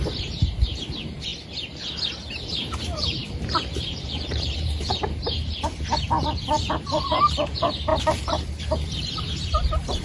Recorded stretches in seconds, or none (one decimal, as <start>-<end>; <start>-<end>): 1.3-2.3; 7.9-8.6